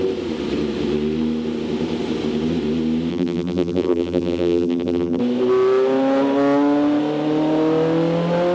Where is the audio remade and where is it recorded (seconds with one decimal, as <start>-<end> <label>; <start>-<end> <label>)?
0.0-3.1 recorded; 3.1-5.2 remade; 5.2-8.5 recorded